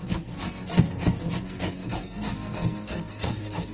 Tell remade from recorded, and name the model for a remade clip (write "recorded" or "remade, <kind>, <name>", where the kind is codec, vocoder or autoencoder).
remade, codec, SNAC